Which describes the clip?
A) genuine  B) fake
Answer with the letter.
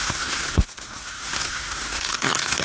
B